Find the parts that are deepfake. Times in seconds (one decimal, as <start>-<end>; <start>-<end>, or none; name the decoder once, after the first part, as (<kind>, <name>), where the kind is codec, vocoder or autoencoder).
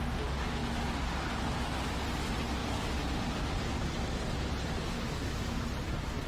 none